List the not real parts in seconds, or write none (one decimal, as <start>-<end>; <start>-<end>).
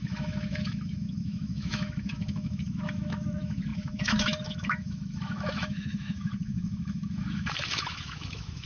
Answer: 0.0-8.7